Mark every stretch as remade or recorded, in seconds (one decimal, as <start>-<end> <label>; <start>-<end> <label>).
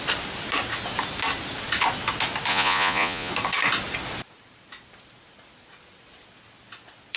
0.0-2.5 recorded; 2.5-3.3 remade; 3.3-7.2 recorded